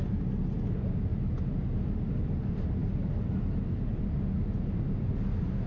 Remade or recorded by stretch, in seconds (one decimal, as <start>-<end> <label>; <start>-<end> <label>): 0.0-5.7 recorded